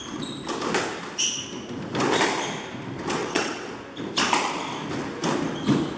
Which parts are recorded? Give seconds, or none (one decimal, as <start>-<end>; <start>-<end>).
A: 0.0-3.2; 3.7-6.0